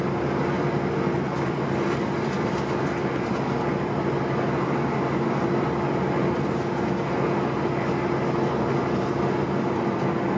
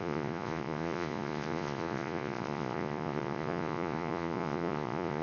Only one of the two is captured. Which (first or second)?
first